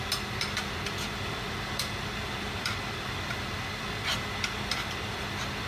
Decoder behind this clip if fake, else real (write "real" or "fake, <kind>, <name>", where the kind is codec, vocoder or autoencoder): real